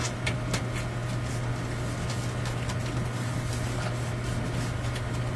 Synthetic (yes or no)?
no